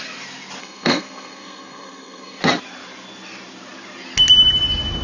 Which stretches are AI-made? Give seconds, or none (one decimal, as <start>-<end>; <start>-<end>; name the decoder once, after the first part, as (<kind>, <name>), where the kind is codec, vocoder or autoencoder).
0.6-2.4 (codec, SNAC)